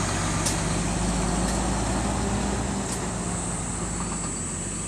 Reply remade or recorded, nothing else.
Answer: recorded